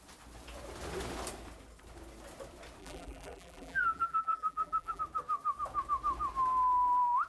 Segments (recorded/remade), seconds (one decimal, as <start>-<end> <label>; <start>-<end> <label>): 0.0-2.8 recorded; 2.8-5.0 remade; 5.0-7.3 recorded